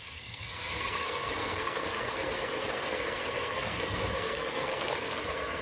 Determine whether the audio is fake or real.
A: fake